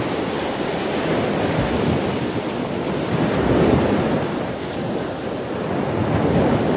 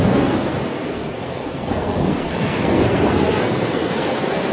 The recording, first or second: first